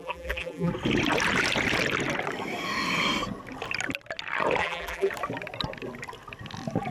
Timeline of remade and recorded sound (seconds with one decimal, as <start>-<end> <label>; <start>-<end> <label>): 0.0-0.7 remade; 0.7-4.6 recorded; 4.6-5.1 remade; 5.1-6.9 recorded